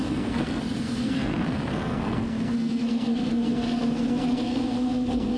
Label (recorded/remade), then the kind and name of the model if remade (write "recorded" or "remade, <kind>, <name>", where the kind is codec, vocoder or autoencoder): remade, codec, SNAC